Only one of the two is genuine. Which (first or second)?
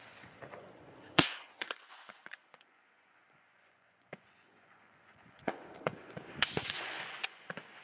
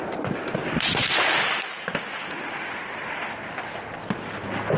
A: second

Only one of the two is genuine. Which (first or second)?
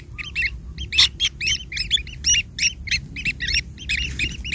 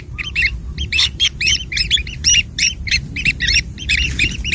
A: first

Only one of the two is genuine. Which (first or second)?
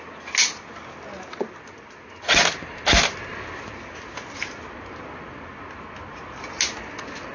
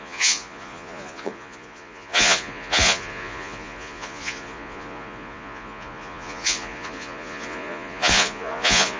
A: first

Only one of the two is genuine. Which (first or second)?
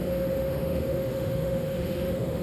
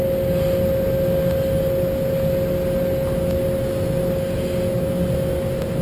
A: second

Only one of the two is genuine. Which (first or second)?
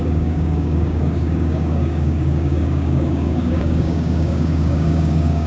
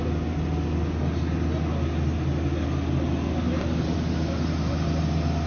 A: second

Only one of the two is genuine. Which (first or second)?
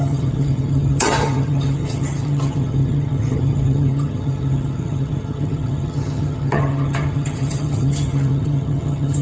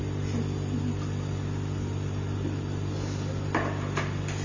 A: second